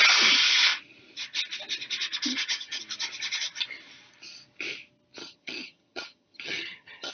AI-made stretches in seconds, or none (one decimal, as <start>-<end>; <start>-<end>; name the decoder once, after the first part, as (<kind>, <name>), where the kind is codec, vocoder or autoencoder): 2.3-2.8 (vocoder, HiFi-GAN); 5.2-7.1